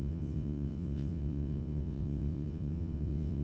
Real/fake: fake